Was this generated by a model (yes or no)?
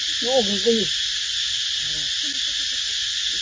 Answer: no